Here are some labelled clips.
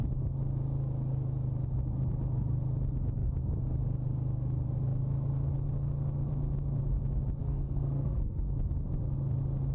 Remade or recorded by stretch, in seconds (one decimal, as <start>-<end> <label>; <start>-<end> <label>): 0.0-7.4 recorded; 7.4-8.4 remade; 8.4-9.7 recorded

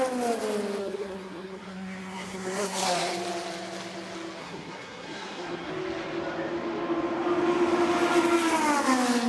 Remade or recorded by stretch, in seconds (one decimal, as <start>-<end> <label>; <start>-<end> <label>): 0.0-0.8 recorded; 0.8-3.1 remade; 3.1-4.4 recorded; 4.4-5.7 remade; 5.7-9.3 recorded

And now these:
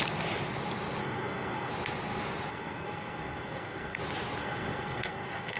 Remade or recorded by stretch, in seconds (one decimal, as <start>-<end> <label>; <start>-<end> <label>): 0.0-1.0 recorded; 1.0-1.7 remade; 1.7-2.5 recorded; 2.5-4.0 remade; 4.0-4.4 recorded; 4.4-5.6 remade

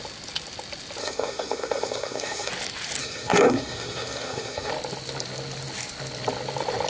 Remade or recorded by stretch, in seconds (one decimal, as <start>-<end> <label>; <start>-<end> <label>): 0.0-1.0 recorded; 1.0-2.5 remade; 2.5-3.0 recorded; 3.0-4.7 remade; 4.7-6.9 recorded